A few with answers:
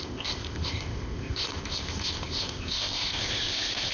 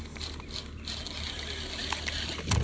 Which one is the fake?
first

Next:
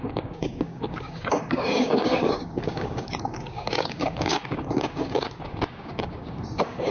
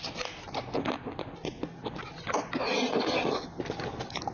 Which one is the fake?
first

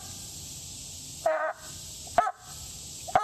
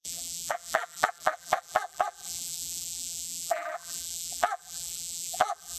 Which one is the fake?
second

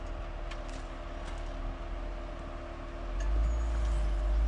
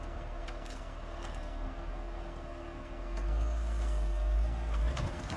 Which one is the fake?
second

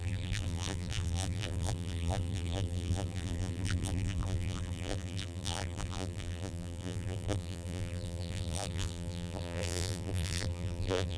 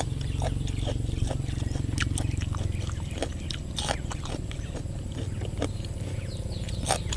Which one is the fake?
first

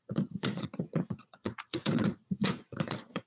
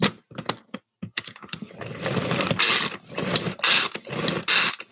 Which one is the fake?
first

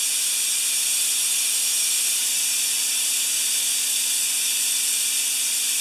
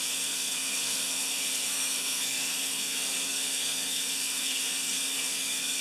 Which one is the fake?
second